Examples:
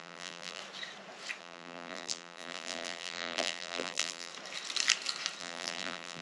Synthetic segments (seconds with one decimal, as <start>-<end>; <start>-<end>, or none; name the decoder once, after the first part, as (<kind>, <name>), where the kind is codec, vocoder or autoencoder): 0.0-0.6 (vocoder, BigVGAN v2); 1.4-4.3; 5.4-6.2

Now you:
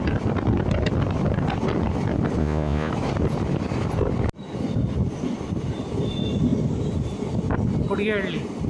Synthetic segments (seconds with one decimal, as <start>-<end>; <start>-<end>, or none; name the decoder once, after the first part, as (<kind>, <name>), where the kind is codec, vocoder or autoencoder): 2.4-2.9 (vocoder, Vocos)

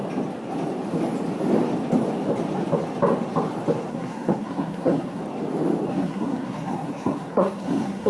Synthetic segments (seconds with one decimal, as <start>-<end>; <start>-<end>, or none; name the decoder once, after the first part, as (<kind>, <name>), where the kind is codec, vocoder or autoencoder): 3.9-5.2 (codec, SNAC); 5.9-8.1

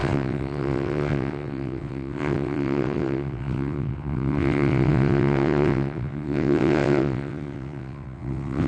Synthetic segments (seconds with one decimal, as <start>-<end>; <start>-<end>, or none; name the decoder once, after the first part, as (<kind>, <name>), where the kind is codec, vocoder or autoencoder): 0.0-8.7 (vocoder, WaveNeXt)